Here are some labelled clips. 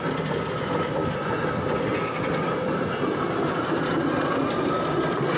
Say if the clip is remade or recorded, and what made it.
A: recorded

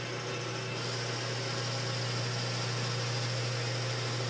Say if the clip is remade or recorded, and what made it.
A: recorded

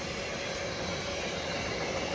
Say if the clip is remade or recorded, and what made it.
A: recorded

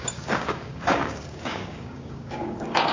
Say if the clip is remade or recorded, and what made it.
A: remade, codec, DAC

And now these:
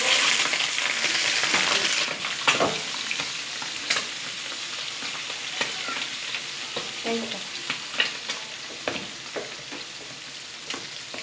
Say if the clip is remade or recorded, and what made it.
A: recorded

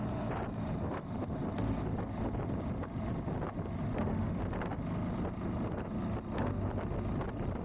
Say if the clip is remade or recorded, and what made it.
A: recorded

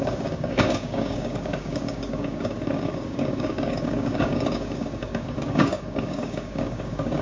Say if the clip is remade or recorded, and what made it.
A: remade, codec, DAC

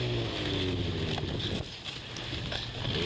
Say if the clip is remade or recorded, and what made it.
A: recorded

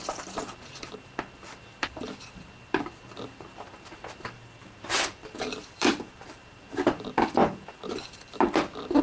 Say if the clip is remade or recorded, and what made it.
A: recorded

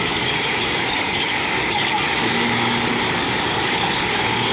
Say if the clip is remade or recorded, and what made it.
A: remade, codec, DAC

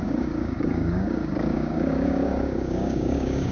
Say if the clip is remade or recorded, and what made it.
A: remade, codec, DAC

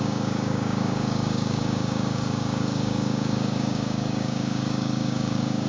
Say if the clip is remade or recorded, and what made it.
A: remade, codec, DAC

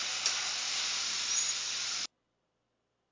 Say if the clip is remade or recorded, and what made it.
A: recorded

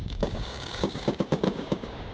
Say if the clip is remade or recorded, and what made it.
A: remade, codec, DAC